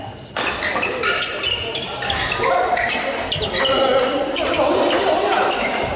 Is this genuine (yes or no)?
yes